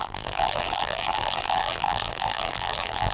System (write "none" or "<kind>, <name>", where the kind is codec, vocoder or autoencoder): vocoder, BigVGAN v2